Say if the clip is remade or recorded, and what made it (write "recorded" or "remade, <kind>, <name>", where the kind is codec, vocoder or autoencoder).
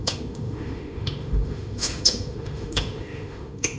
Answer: remade, autoencoder, DAC-VAE